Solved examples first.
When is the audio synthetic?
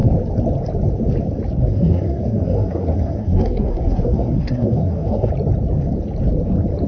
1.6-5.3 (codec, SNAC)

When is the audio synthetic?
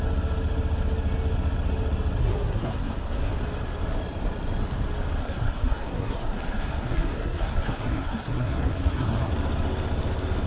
2.2-3.3 (codec, SNAC); 5.2-9.3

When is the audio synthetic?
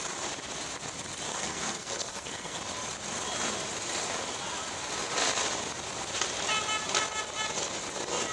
1.3-2.6 (codec, SNAC)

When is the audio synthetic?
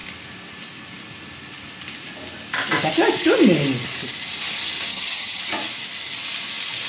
4.9-5.4 (vocoder, HiFi-GAN)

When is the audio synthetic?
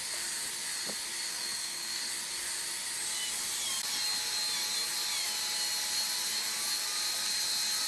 1.3-2.0 (codec, SNAC)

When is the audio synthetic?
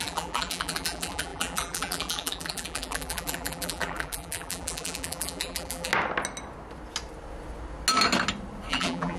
0.0-5.9 (vocoder, BigVGAN v2); 8.7-9.2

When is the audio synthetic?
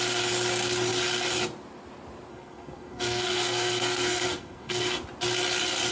2.3-5.0 (codec, SNAC)